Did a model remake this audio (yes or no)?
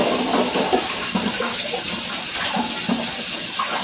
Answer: no